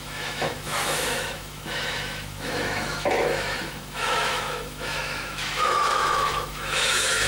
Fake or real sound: fake